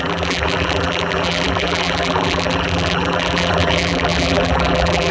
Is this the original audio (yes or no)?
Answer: no